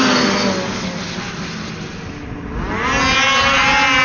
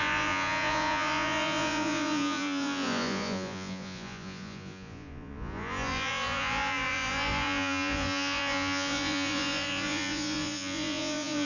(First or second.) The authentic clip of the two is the first